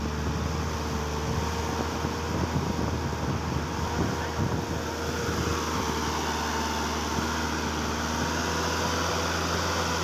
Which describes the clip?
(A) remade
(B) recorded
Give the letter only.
B